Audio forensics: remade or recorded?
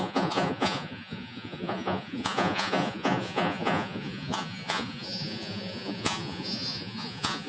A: remade